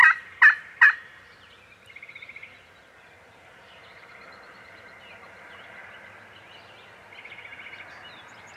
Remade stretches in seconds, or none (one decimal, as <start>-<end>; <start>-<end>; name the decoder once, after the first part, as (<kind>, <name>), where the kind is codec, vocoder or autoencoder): 0.0-5.0 (vocoder, BigVGAN v2)